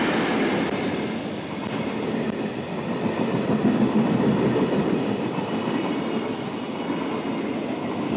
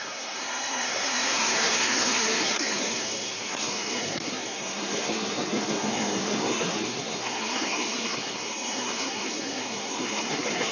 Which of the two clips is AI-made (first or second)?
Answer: second